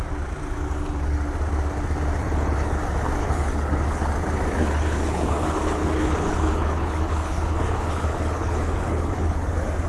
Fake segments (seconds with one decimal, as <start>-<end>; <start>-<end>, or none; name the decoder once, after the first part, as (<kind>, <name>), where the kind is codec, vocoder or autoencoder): 2.2-2.8 (codec, HILCodec); 3.2-4.1; 4.6-9.5